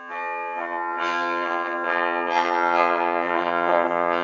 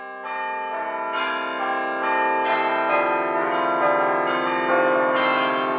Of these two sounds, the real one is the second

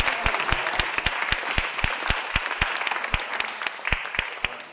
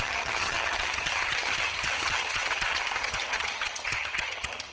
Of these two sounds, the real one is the first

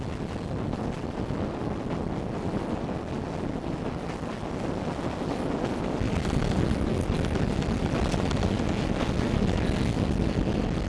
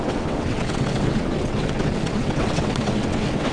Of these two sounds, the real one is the first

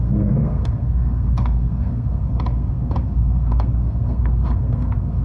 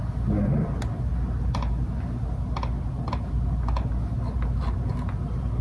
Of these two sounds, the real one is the second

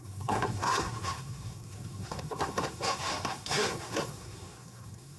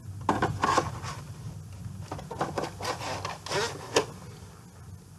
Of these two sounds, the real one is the second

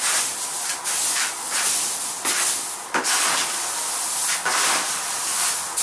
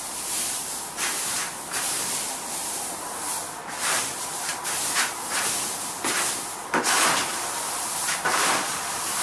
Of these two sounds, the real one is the first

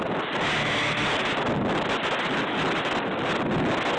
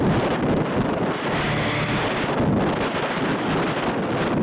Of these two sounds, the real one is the first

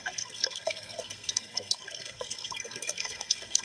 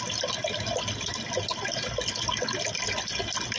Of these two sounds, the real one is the second